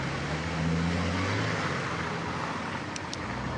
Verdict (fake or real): real